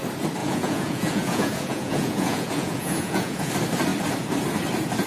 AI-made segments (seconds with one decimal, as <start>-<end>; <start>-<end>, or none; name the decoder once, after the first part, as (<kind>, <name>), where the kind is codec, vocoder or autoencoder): 0.4-3.5 (vocoder, Vocos)